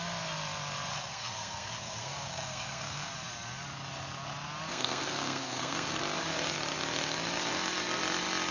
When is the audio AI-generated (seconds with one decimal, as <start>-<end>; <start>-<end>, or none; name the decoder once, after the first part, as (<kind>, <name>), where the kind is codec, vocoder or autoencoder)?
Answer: 0.9-3.1 (codec, SNAC); 4.7-6.0